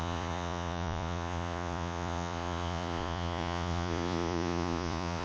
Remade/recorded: remade